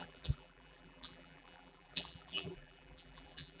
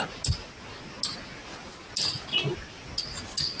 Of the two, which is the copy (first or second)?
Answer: first